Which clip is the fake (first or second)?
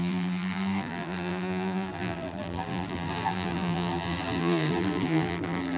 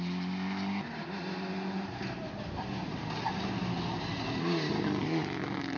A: first